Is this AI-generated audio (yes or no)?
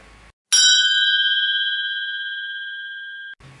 no